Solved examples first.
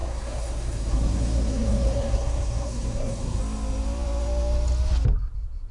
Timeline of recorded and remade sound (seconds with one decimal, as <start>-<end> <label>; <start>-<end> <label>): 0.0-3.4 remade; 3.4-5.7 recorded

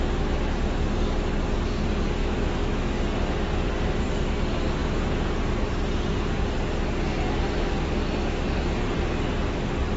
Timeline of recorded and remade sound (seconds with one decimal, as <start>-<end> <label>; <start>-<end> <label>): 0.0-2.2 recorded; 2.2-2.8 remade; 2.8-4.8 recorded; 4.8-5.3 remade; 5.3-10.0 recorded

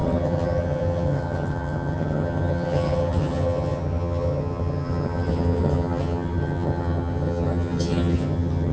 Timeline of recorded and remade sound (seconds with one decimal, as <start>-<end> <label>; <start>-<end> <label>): 0.0-8.7 remade

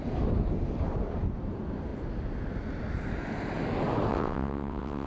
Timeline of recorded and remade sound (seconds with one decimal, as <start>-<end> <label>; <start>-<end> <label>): 0.0-4.1 recorded; 4.1-5.1 remade

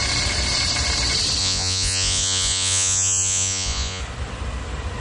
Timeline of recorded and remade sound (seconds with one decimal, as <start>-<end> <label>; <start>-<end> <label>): 0.0-1.4 recorded; 1.4-4.0 remade; 4.0-5.0 recorded